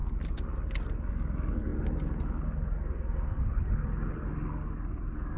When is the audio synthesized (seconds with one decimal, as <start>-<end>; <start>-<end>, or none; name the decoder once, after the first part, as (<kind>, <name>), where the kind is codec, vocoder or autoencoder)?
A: none